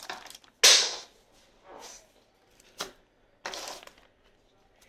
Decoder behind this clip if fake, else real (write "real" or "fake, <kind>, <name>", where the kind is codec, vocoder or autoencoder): real